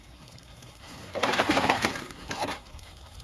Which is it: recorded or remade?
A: remade